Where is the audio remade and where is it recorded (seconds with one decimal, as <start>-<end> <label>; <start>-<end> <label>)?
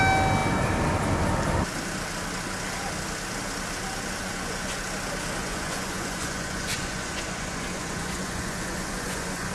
0.0-4.2 recorded; 4.2-4.8 remade; 4.8-5.4 recorded; 5.4-9.5 remade